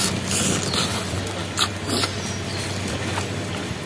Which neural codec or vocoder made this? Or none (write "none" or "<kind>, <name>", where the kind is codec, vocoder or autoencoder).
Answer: none